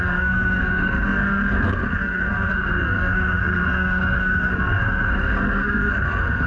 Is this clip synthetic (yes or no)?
yes